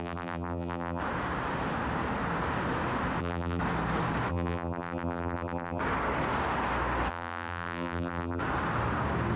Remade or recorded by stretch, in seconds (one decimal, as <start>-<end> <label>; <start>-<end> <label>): 0.0-1.0 remade; 1.0-3.2 recorded; 3.2-3.6 remade; 3.6-4.3 recorded; 4.3-5.8 remade; 5.8-7.1 recorded; 7.1-8.4 remade; 8.4-9.4 recorded